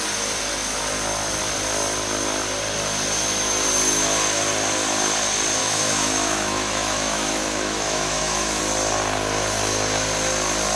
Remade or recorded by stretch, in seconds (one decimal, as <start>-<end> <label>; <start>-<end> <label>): 0.0-5.6 recorded; 5.6-8.6 remade; 8.6-10.8 recorded